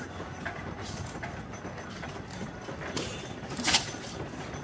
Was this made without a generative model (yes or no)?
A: yes